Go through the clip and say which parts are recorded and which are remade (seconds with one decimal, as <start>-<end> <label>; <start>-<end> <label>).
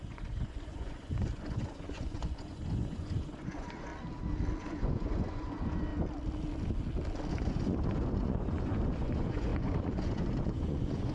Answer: 0.0-3.9 remade; 3.9-4.6 recorded; 4.6-5.9 remade; 5.9-7.3 recorded; 7.3-11.1 remade